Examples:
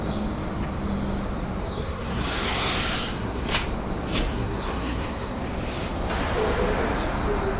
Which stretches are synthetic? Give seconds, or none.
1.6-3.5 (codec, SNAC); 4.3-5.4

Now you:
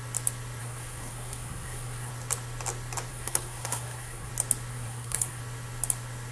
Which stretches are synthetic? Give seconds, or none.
0.6-2.1 (codec, SNAC); 3.1-4.3; 4.7-5.4

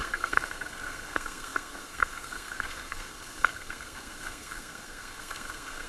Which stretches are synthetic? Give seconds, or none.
0.0-5.9 (codec, SNAC)

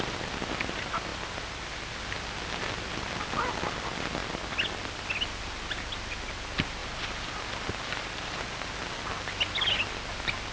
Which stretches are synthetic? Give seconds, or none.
none

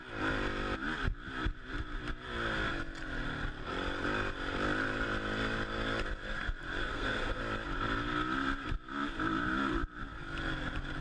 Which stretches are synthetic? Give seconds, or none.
6.8-7.4 (codec, SNAC)